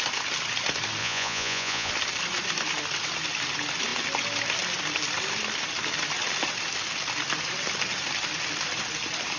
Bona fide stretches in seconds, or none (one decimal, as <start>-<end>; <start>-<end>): 0.0-1.0; 1.9-9.4